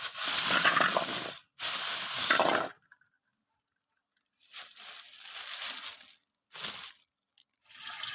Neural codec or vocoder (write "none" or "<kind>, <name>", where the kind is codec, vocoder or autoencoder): none